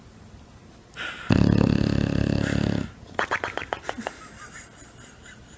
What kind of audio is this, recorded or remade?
recorded